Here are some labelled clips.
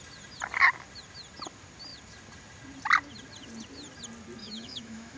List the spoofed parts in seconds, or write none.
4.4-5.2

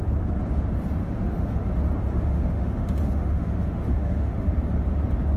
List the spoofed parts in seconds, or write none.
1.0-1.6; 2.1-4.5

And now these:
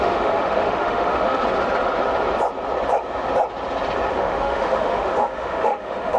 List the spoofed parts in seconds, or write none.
0.0-1.4; 4.1-6.2